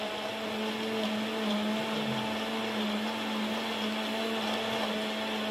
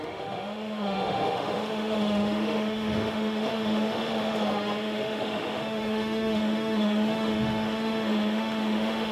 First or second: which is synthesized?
second